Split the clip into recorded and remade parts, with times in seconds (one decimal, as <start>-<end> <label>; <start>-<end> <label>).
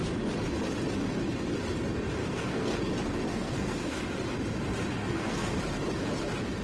0.0-2.2 recorded; 2.2-2.8 remade; 2.8-3.3 recorded; 3.3-4.0 remade; 4.0-5.0 recorded; 5.0-5.6 remade; 5.6-6.6 recorded